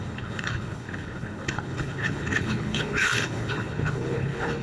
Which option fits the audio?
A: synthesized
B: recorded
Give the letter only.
A